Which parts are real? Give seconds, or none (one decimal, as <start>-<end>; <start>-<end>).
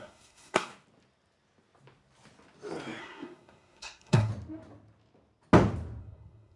0.7-3.0; 4.3-6.0